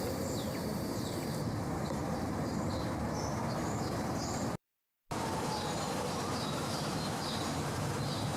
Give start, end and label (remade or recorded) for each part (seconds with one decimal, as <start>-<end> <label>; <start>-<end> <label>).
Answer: 0.0-8.4 remade